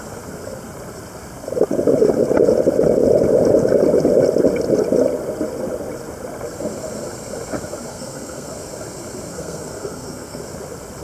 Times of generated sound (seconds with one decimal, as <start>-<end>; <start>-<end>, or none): 7.9-8.5; 9.3-10.4